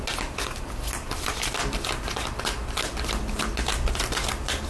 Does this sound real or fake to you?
real